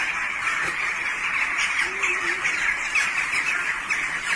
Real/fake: real